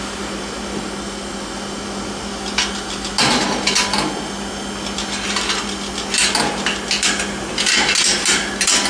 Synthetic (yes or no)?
no